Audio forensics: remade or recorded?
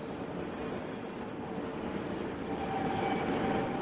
recorded